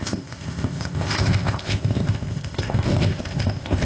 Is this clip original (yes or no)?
no